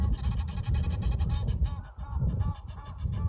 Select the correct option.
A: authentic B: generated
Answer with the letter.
A